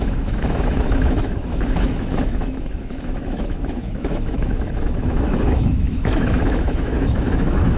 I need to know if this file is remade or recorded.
remade